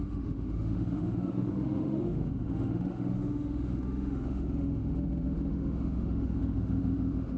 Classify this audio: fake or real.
fake